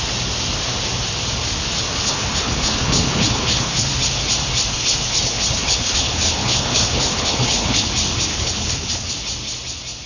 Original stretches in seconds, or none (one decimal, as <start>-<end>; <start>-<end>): 0.0-2.0; 3.9-4.7; 7.9-8.3; 9.1-10.1